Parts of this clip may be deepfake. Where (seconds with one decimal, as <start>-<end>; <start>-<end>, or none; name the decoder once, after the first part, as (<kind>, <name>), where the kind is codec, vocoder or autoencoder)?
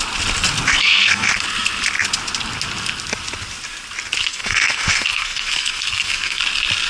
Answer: 0.7-1.3 (codec, SNAC); 4.3-6.4